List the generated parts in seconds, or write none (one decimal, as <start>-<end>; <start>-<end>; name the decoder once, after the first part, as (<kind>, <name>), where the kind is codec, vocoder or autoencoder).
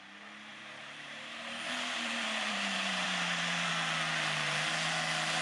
0.5-3.7 (vocoder, BigVGAN v2)